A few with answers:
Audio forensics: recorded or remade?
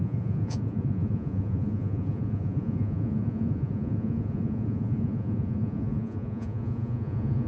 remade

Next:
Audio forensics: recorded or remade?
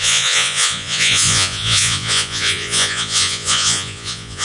remade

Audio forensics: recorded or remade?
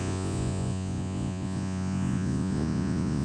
remade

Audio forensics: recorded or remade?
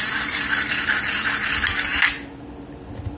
recorded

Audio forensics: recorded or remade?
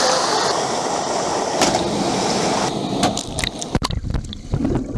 recorded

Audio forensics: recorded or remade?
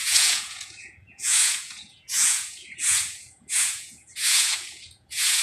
remade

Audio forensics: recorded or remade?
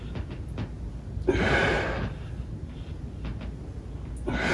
recorded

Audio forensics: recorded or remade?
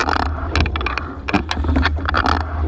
recorded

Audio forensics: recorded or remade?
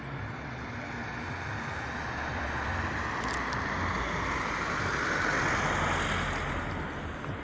recorded